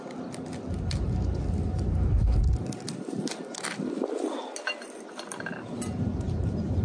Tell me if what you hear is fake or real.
real